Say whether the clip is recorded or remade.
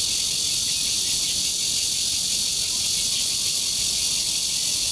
recorded